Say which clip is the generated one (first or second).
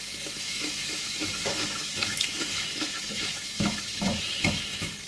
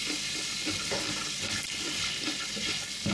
first